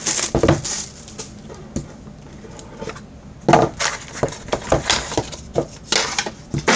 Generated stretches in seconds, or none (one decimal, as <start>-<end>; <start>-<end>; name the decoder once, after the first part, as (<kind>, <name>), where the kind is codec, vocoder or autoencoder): none